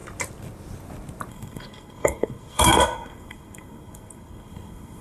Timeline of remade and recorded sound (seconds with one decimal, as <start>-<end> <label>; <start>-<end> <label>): 0.0-1.3 recorded; 1.3-5.0 remade